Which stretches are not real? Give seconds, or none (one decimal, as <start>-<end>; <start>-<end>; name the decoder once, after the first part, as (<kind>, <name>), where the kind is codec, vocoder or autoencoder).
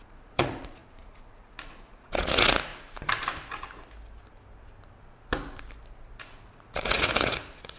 0.0-2.7 (vocoder, Vocos); 6.2-7.8